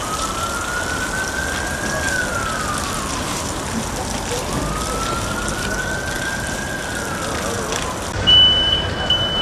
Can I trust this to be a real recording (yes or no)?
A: yes